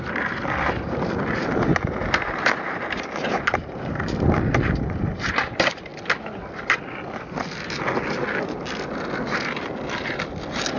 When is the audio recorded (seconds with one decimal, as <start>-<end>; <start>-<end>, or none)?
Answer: 5.9-10.8